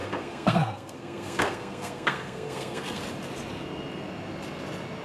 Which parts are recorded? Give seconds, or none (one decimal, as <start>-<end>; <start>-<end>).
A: 3.0-5.0